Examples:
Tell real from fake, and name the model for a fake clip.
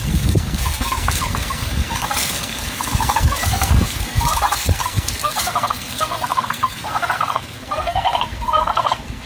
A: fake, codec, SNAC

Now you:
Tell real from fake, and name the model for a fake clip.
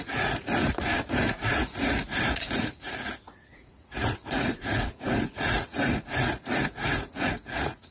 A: fake, vocoder, Vocos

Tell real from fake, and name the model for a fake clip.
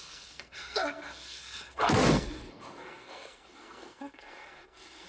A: fake, codec, SNAC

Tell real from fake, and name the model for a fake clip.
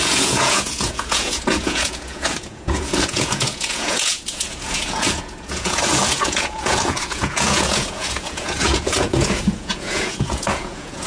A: fake, vocoder, Vocos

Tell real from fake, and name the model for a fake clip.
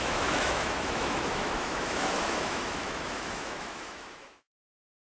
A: fake, autoencoder, DAC-VAE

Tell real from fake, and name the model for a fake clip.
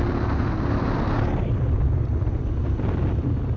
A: real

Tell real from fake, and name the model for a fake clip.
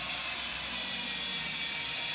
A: real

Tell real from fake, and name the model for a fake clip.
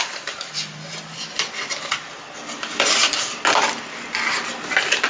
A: real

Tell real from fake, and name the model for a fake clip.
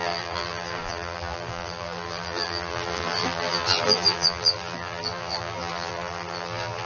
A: fake, vocoder, BigVGAN v2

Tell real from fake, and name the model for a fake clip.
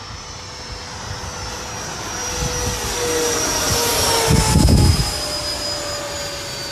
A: real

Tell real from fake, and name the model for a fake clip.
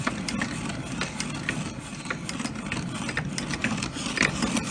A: real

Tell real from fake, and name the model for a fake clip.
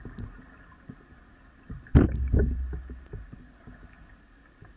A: real